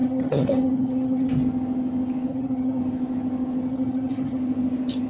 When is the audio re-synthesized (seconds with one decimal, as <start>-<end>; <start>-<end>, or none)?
0.0-1.3; 2.3-2.8; 3.7-4.4